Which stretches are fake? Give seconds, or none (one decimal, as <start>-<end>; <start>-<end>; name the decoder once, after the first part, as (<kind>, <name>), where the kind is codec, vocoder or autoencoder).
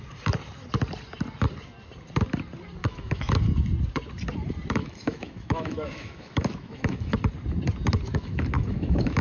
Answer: 2.8-3.4 (autoencoder, DAC-VAE); 4.8-7.1; 8.1-9.2